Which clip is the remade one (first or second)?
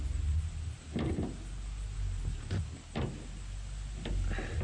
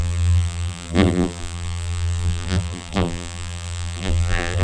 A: second